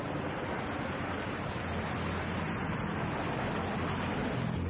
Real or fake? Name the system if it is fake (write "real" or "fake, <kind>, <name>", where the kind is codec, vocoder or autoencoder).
real